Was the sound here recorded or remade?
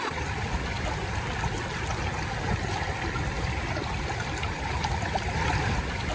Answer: recorded